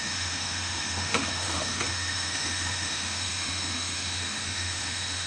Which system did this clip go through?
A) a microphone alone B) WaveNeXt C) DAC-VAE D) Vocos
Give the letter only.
C